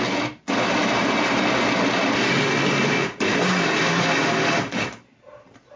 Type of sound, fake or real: real